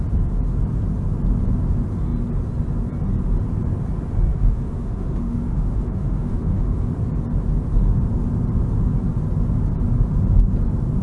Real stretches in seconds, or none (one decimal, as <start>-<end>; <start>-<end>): 0.0-4.3; 6.9-11.0